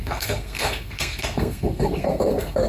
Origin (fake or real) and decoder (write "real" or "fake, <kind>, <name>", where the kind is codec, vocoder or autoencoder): fake, codec, SNAC